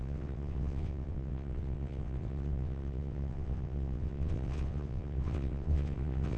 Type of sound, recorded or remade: remade